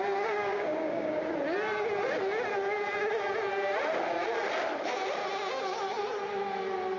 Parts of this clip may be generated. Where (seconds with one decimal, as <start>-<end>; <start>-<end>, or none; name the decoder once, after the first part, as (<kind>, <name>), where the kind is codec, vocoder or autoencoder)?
0.4-1.2 (codec, DAC)